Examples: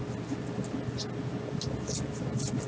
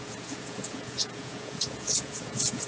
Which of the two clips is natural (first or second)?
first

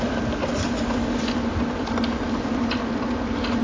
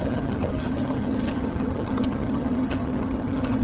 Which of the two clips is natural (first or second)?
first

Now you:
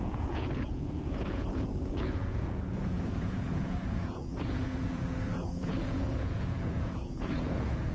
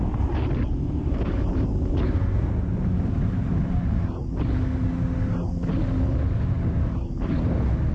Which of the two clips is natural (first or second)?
second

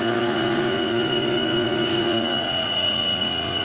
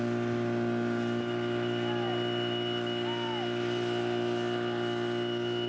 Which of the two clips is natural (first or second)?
second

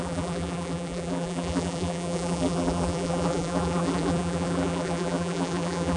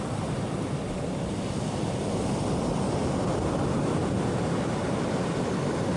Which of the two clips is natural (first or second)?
second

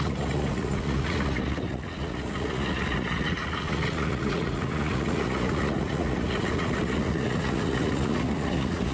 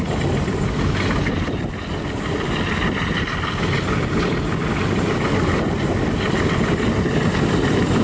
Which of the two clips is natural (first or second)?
second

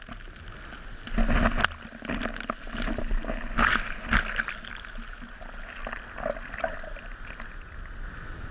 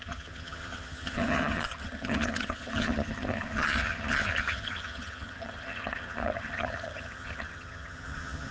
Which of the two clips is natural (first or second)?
first